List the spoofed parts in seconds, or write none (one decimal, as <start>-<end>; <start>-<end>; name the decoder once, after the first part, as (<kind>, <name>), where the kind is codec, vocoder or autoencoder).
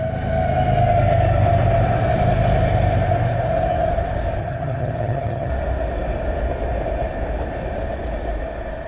4.4-5.5 (vocoder, HiFi-GAN)